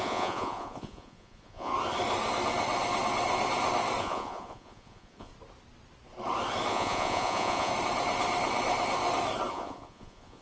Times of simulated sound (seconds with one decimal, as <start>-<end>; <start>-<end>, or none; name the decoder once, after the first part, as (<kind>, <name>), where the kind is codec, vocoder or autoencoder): 0.0-1.7 (vocoder, Vocos); 4.0-5.3; 6.7-7.7; 9.5-10.4